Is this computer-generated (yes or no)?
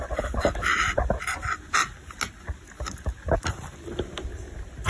no